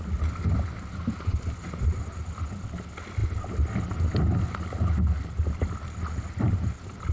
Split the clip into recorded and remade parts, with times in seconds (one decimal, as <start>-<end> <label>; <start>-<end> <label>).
0.0-7.1 recorded